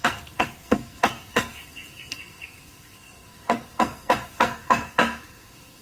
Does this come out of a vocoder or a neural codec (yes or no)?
yes